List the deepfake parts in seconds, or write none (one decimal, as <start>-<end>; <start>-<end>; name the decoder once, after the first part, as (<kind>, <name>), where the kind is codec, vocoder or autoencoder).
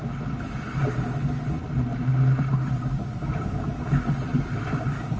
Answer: 4.3-5.2 (vocoder, BigVGAN v2)